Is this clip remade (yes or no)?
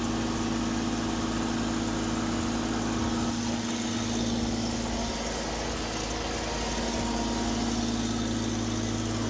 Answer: no